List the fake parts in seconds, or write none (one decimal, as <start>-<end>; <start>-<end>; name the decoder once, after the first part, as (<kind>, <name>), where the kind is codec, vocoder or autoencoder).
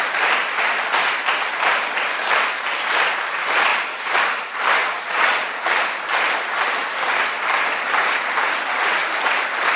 3.7-4.2 (vocoder, Vocos); 4.8-5.7